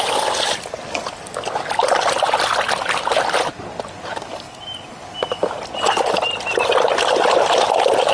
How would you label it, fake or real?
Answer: real